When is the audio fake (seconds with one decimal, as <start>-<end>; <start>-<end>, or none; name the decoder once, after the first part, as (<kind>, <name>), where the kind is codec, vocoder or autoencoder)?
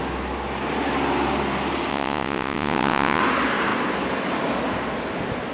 1.9-3.2 (vocoder, WaveNeXt)